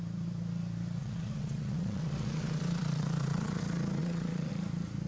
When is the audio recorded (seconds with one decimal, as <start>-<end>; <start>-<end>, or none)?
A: 0.0-1.0; 3.6-4.0; 4.5-5.1